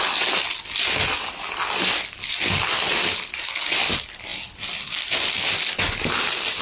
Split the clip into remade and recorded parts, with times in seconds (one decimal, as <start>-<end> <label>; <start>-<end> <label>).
0.0-6.6 recorded